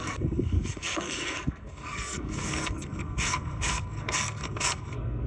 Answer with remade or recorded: remade